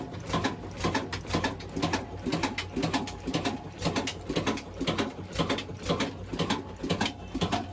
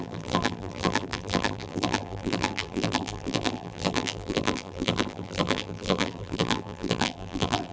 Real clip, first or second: first